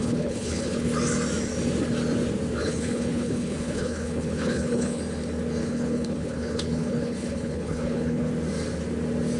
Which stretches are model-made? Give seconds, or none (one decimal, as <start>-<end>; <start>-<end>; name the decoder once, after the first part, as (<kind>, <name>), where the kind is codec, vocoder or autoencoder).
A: 0.0-0.9 (codec, HILCodec); 2.6-5.0; 5.6-8.3

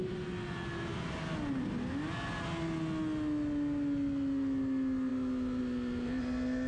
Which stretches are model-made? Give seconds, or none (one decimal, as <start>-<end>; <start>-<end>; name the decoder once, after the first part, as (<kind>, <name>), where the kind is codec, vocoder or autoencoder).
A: none